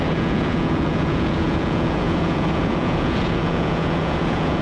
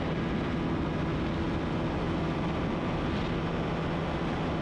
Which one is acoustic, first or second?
second